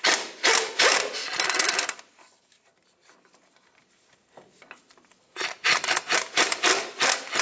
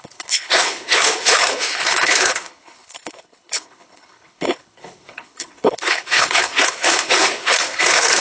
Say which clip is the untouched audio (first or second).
first